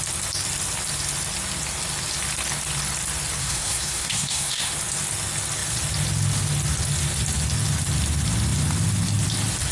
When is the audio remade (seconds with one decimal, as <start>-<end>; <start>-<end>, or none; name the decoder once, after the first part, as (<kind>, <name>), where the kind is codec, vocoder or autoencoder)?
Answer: 3.4-4.7 (codec, SNAC)